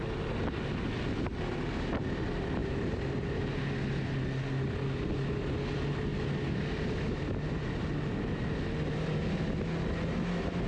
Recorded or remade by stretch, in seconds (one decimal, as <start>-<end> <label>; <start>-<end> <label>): 0.0-10.7 recorded